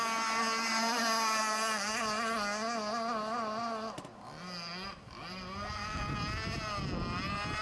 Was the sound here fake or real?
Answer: real